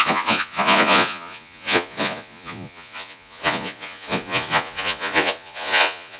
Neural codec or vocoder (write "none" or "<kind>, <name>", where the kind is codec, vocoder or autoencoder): vocoder, Vocos